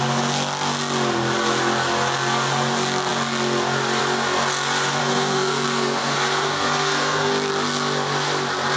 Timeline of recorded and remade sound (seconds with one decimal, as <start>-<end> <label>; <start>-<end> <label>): 0.0-5.0 recorded; 5.0-7.3 remade; 7.3-8.8 recorded